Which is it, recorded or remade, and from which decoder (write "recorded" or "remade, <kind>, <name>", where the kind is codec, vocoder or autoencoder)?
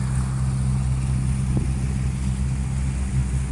recorded